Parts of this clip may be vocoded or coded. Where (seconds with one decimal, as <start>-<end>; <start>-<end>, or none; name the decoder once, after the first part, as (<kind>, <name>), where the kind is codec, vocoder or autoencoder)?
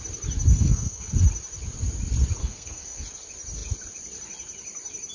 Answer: 0.5-1.1 (codec, SNAC); 2.4-3.0